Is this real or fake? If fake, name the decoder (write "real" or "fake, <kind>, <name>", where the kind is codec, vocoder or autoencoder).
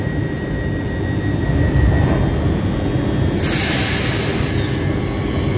real